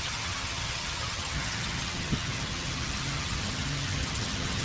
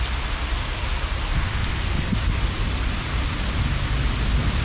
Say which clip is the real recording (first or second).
second